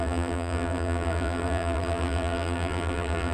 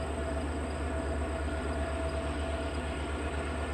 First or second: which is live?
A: second